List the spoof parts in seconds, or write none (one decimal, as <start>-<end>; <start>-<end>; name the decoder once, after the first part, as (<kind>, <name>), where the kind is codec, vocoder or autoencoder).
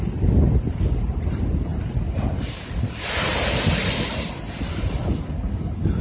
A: none